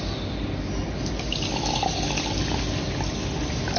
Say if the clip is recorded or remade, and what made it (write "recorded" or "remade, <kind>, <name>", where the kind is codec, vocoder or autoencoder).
recorded